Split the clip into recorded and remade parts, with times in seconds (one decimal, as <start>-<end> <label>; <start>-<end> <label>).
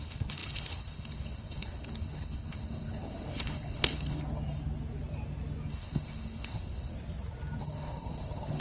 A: 0.0-4.2 remade; 4.2-5.7 recorded; 5.7-6.9 remade; 6.9-7.6 recorded; 7.6-8.6 remade